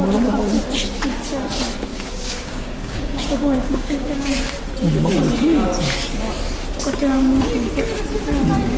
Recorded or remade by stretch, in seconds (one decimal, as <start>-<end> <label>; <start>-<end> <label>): 0.0-1.9 recorded; 1.9-4.4 remade; 4.4-8.8 recorded